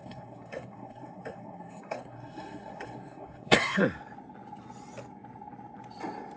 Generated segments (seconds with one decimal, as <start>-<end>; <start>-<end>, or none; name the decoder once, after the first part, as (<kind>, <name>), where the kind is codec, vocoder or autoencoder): 0.0-3.8 (codec, SNAC)